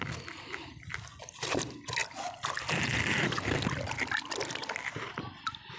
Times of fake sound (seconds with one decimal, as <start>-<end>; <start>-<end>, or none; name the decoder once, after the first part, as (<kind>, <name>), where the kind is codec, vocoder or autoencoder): none